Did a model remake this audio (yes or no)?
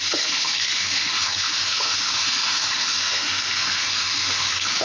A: yes